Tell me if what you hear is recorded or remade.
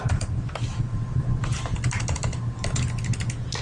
recorded